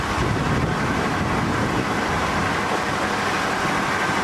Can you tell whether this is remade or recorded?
recorded